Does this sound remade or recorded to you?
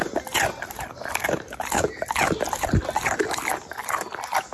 recorded